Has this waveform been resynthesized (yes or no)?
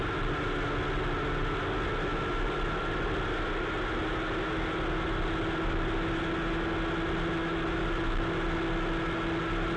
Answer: no